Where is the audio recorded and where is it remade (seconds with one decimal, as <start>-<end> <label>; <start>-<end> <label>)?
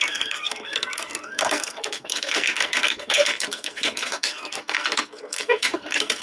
0.0-6.2 remade